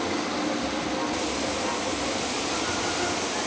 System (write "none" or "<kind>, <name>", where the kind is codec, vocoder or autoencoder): none